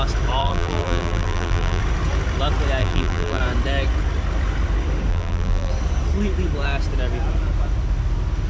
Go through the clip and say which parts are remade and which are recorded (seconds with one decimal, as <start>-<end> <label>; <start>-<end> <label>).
0.0-0.4 recorded; 0.4-1.8 remade; 1.8-2.8 recorded; 2.8-3.4 remade; 3.4-5.1 recorded; 5.1-5.7 remade; 5.7-8.5 recorded